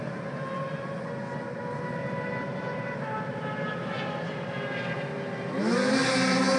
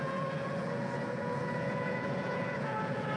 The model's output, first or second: second